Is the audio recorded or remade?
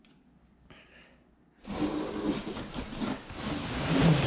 recorded